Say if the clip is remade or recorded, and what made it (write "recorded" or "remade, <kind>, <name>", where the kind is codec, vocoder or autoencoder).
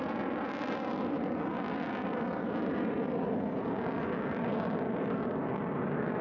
recorded